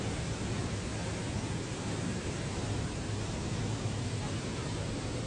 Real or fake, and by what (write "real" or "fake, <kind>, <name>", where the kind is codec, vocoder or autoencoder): real